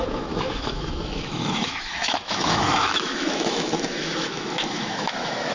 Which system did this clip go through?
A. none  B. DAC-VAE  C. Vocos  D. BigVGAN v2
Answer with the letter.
B